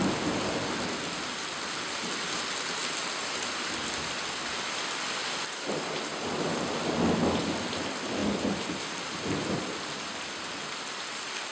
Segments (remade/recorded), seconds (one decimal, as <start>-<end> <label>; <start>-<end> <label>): 0.0-8.2 recorded; 8.2-8.8 remade; 8.8-11.5 recorded